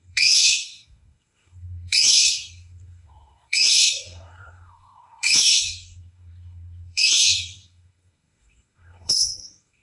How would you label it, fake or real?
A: fake